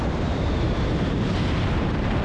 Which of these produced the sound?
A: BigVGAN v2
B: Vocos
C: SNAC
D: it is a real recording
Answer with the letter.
A